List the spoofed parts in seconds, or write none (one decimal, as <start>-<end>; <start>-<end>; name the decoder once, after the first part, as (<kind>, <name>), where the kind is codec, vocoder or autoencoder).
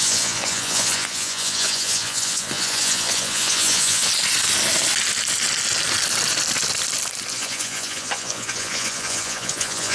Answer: 0.0-4.0 (vocoder, Vocos); 7.3-9.9